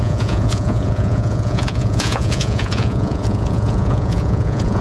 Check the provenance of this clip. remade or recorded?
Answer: remade